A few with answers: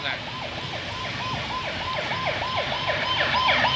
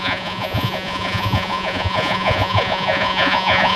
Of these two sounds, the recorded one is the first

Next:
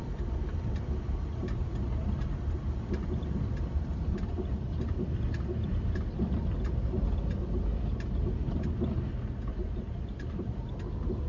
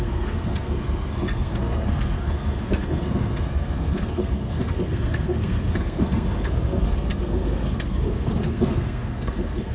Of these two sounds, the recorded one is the first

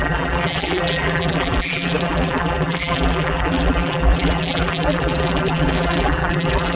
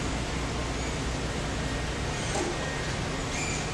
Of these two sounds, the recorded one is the second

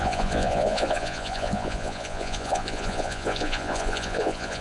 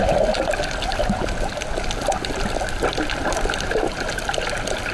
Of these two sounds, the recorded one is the second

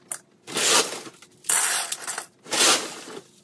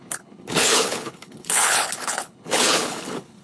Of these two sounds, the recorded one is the first